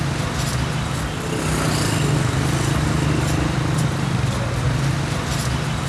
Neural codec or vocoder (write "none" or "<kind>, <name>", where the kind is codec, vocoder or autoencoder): none